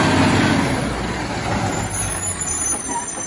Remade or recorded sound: recorded